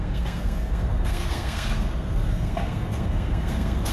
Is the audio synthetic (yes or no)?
yes